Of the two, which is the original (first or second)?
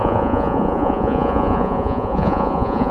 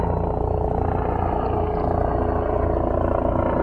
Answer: second